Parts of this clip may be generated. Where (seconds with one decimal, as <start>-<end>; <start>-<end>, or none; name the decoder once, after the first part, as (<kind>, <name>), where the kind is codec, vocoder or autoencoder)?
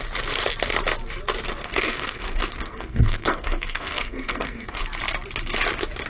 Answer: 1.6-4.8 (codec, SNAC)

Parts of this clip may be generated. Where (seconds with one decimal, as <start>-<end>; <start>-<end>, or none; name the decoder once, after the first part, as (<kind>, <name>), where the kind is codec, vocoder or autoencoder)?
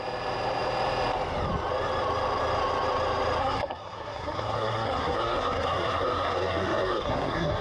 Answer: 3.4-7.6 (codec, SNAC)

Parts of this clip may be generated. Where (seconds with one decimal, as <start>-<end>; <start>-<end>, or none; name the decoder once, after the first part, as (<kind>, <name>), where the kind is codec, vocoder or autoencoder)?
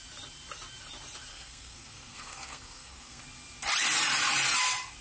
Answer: 1.3-3.2 (codec, SNAC)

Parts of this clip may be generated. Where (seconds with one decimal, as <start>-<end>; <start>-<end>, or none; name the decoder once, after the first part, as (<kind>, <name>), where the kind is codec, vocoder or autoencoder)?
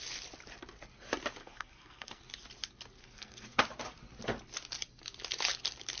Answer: 1.4-2.2 (codec, SNAC); 3.0-3.6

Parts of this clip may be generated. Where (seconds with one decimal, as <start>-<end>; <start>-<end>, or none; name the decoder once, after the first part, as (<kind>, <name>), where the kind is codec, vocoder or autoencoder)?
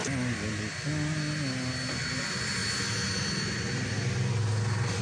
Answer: none